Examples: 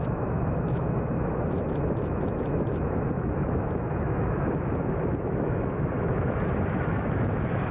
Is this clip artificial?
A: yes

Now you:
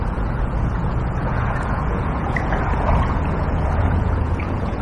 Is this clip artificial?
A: yes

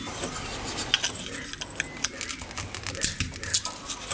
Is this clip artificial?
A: no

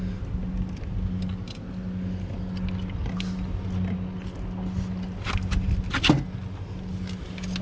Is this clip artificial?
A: no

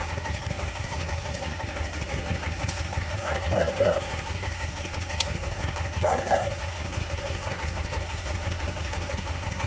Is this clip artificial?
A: yes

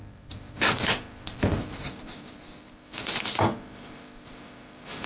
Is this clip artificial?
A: yes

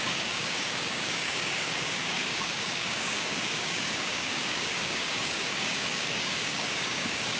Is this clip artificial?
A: yes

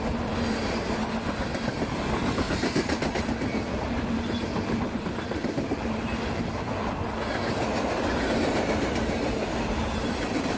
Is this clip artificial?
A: no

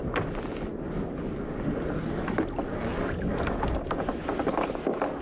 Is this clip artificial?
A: no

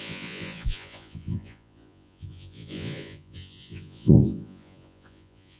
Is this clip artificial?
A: yes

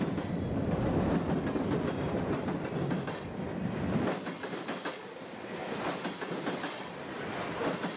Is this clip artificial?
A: no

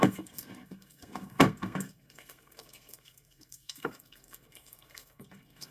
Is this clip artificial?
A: yes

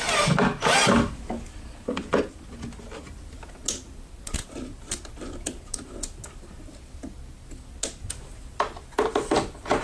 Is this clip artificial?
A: no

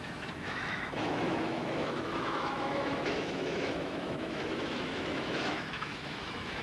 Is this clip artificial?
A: yes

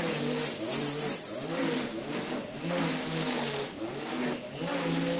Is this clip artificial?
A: no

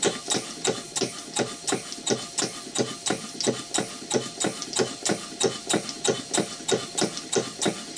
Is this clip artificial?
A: no